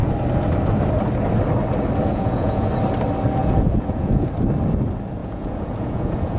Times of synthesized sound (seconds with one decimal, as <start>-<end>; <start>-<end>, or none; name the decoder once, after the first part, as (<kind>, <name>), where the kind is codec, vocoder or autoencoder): 2.1-2.7 (vocoder, Vocos); 3.4-4.3; 5.2-6.4